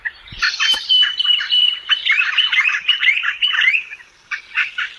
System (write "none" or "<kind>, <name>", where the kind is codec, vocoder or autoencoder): none